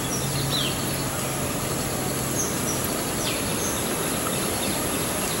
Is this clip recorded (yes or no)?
yes